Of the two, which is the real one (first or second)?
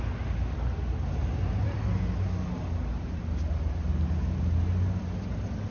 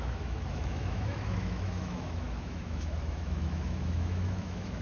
first